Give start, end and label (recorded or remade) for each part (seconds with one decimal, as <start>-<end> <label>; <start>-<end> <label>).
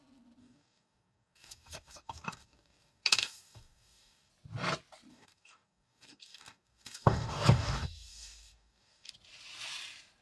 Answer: 0.0-0.4 recorded; 0.4-4.3 remade; 4.3-5.1 recorded; 5.1-9.1 remade; 9.1-10.2 recorded